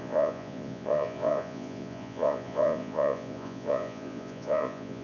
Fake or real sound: fake